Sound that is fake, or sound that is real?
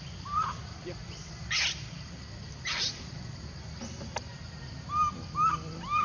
real